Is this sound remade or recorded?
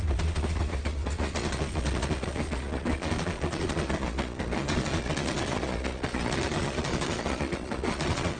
remade